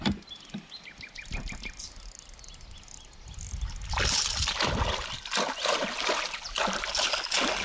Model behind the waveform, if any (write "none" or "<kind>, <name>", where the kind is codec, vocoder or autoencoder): none